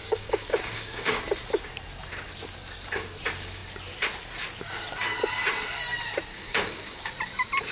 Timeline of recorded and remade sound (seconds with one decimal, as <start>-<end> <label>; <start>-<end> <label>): 0.0-1.2 remade; 1.2-6.3 recorded; 6.3-7.1 remade; 7.1-7.7 recorded